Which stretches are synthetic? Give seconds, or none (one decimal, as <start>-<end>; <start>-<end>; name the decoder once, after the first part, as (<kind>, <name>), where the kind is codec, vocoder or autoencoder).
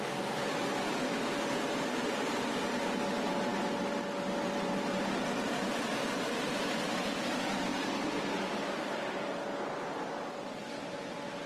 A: 7.7-8.3 (vocoder, BigVGAN v2)